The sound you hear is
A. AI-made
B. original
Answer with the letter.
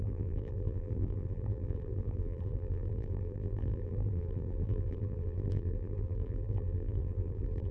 A